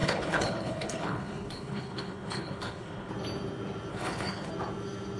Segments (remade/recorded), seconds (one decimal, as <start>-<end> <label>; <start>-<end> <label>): 0.0-3.1 remade; 3.1-3.9 recorded; 3.9-4.5 remade; 4.5-5.2 recorded